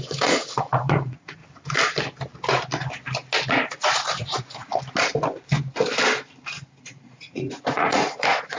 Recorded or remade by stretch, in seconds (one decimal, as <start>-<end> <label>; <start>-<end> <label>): 0.0-1.4 remade; 1.4-3.5 recorded; 3.5-4.7 remade; 4.7-6.8 recorded; 6.8-8.6 remade

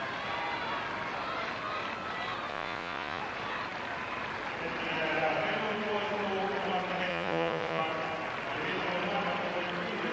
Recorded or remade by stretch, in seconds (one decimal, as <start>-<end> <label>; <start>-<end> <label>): 0.0-2.5 recorded; 2.5-3.2 remade; 3.2-7.1 recorded; 7.1-7.8 remade; 7.8-10.1 recorded

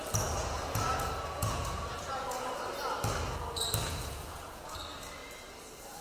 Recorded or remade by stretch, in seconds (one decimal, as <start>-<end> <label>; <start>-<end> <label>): 0.0-0.4 recorded; 0.4-2.5 remade; 2.5-3.8 recorded; 3.8-4.8 remade; 4.8-6.0 recorded

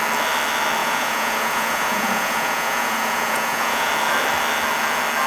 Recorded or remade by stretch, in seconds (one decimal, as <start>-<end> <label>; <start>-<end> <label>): 0.0-0.8 recorded; 0.8-3.9 remade; 3.9-5.3 recorded